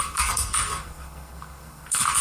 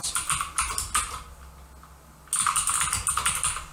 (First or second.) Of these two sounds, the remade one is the first